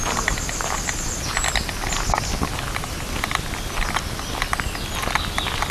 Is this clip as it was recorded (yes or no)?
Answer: yes